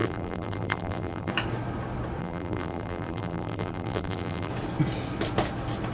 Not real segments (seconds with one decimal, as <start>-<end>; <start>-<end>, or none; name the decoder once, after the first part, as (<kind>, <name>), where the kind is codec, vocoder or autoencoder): 0.0-1.3 (vocoder, BigVGAN v2); 2.2-4.5